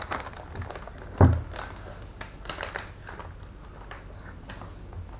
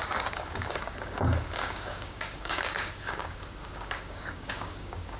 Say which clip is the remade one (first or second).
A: second